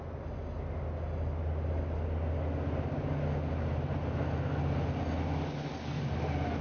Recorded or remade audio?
recorded